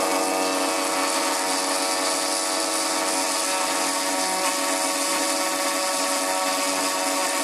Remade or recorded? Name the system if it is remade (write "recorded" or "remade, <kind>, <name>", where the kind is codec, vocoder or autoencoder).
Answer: recorded